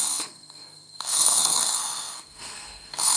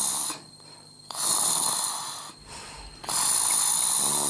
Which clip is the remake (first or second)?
first